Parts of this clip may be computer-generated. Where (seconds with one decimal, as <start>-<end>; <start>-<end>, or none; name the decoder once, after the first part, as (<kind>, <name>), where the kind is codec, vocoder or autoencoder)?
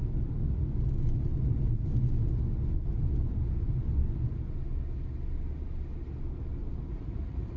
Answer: 6.9-7.6 (vocoder, Vocos)